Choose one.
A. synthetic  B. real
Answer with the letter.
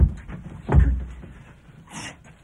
B